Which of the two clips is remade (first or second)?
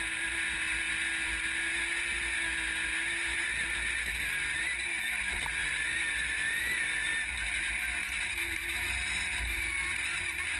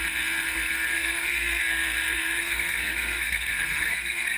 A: second